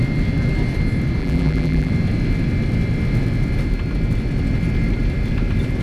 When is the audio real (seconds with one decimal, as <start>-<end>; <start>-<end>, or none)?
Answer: 0.0-1.2; 1.9-5.8